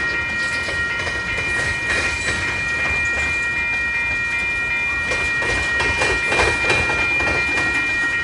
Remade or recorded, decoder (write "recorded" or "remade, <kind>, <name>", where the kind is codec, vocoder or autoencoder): recorded